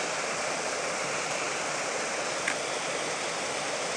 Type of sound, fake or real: real